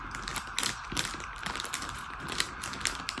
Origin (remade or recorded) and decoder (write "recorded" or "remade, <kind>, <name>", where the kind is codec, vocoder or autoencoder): recorded